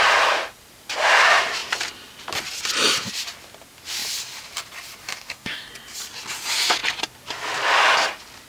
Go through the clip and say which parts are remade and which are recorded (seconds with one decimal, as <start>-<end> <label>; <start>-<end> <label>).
0.0-5.0 recorded; 5.0-5.7 remade; 5.7-8.5 recorded